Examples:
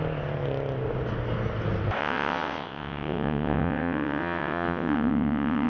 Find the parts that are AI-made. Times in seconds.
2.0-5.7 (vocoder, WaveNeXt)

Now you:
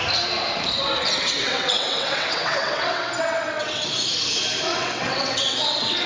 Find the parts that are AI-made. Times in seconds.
1.4-3.9 (vocoder, WaveNeXt); 4.7-6.1

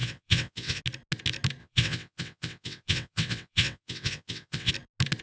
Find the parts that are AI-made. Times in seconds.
0.0-0.8 (vocoder, WaveNeXt); 1.6-4.7

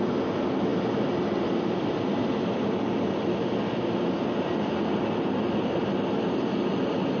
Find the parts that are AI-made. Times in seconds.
none

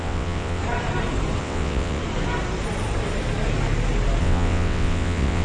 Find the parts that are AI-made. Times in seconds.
0.0-0.6 (vocoder, WaveNeXt); 1.4-2.0; 4.2-5.4